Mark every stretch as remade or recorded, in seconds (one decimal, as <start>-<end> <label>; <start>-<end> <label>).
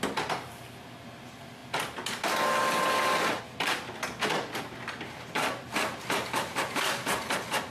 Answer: 0.0-7.7 recorded